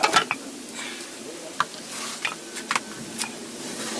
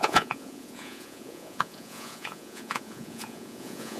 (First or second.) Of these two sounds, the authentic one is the first